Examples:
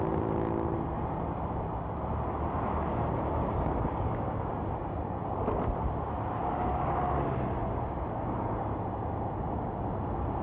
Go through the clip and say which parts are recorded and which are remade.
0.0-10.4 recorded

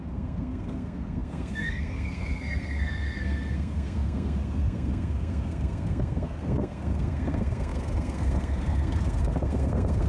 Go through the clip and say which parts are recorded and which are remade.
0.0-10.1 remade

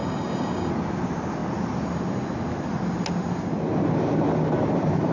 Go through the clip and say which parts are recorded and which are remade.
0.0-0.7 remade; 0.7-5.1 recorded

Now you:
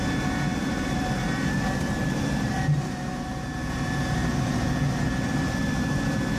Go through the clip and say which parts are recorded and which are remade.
0.0-0.5 recorded; 0.5-4.3 remade; 4.3-6.4 recorded